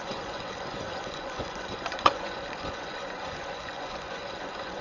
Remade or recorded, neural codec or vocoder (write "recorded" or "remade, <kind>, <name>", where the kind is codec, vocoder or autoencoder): remade, vocoder, Vocos